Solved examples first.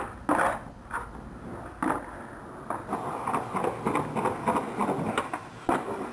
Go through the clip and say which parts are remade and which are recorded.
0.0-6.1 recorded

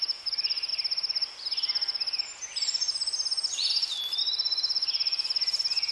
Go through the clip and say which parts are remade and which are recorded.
0.0-0.7 remade; 0.7-4.2 recorded; 4.2-5.9 remade

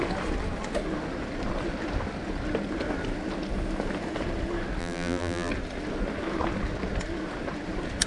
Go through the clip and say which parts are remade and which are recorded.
0.0-4.8 recorded; 4.8-5.5 remade; 5.5-8.1 recorded

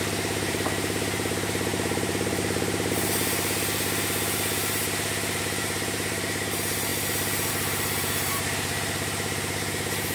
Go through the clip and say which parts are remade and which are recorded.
0.0-10.1 remade

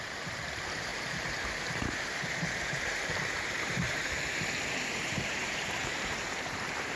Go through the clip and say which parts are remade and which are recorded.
0.0-7.0 remade